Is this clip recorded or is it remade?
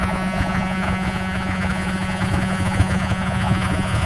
remade